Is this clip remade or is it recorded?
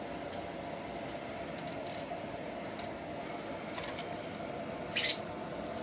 recorded